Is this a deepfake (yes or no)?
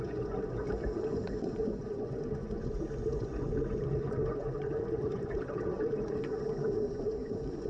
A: yes